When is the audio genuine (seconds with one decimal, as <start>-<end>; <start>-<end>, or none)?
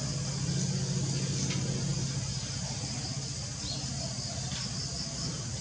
0.0-5.6